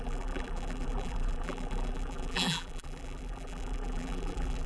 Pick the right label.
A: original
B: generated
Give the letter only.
B